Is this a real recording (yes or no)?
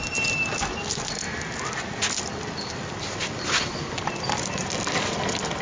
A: yes